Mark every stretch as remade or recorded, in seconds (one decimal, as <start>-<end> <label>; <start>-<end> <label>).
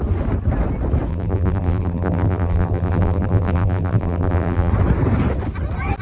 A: 0.0-1.1 recorded; 1.1-4.7 remade; 4.7-6.0 recorded